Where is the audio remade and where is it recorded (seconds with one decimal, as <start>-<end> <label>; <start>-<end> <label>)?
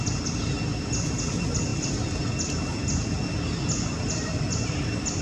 0.0-5.2 recorded